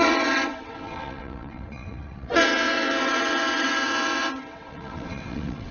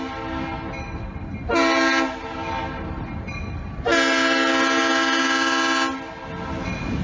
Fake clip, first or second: first